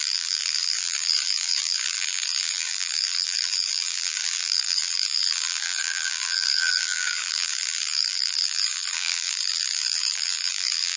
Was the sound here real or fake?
fake